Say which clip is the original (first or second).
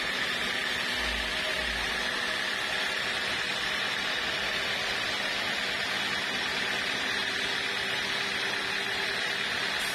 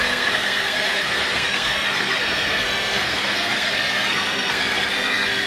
first